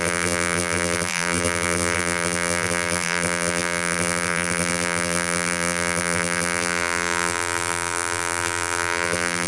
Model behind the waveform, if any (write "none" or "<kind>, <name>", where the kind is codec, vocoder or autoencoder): vocoder, BigVGAN v2